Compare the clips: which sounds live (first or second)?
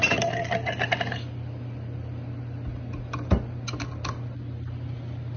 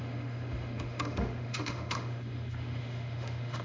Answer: first